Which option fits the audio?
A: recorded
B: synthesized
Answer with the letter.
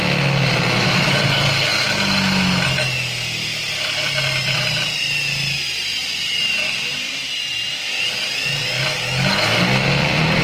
A